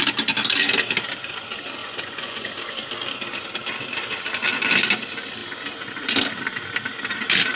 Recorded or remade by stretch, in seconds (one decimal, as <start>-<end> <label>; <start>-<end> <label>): 0.0-1.8 recorded; 1.8-2.5 remade; 2.5-7.6 recorded